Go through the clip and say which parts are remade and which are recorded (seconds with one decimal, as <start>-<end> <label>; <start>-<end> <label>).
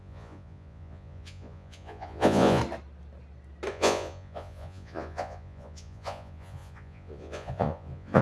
0.0-2.6 remade; 2.6-3.7 recorded; 3.7-8.2 remade